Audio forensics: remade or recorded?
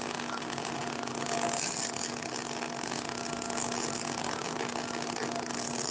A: recorded